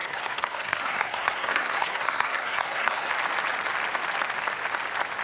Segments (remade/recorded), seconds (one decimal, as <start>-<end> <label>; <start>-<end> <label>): 0.0-3.1 remade; 3.1-5.2 recorded